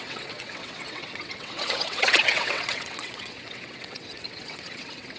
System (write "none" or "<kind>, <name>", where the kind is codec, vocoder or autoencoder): vocoder, WaveNeXt